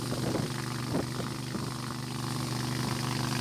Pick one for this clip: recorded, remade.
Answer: recorded